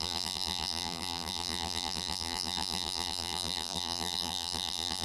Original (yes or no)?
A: no